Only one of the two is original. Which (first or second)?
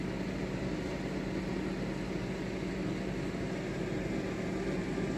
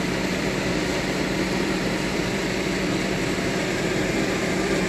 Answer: first